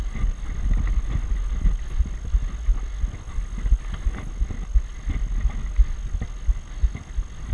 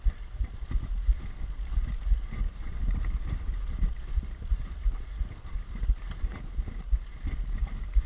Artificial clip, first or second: second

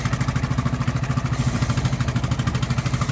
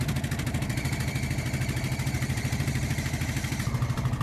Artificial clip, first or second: second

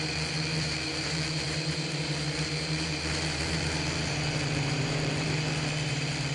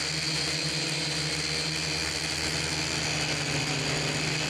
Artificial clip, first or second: first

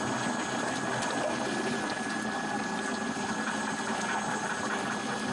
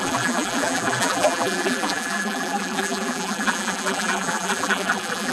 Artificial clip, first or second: second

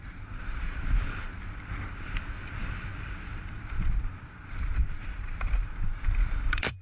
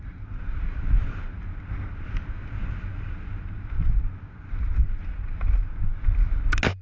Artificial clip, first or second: first